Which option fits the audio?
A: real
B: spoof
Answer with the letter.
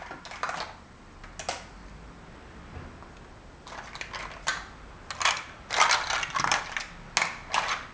A